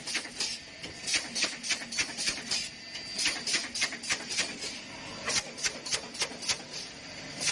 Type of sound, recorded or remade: recorded